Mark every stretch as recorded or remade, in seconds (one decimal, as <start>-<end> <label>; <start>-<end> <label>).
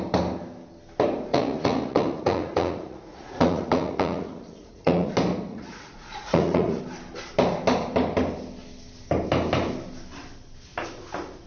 0.0-1.3 recorded; 1.3-5.1 remade; 5.1-5.5 recorded; 5.5-6.8 remade; 6.8-11.5 recorded